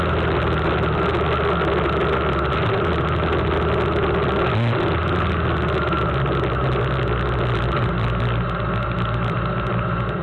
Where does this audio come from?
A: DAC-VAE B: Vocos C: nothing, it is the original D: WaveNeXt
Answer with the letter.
C